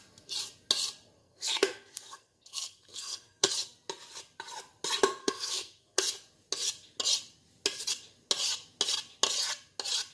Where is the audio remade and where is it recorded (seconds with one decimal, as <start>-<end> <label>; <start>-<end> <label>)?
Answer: 0.0-1.2 recorded; 1.2-3.5 remade; 3.5-5.2 recorded; 5.2-6.0 remade; 6.0-10.1 recorded